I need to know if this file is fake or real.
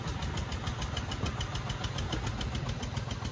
real